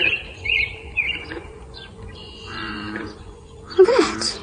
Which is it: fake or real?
fake